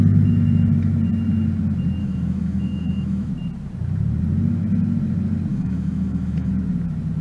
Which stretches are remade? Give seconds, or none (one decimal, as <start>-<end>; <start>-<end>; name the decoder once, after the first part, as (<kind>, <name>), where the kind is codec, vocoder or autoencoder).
2.0-3.3 (autoencoder, DAC-VAE); 5.5-6.5